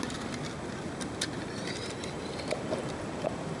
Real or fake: real